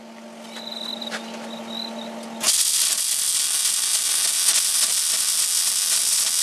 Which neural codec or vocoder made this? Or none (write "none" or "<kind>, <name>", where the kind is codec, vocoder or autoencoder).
none